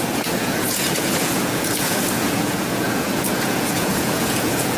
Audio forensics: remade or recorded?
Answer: remade